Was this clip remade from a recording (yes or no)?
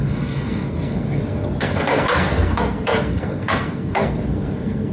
yes